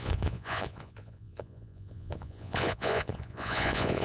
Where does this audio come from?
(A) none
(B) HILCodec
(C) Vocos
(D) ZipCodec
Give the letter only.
C